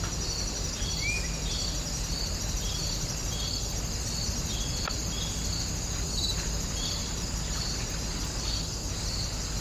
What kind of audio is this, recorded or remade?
recorded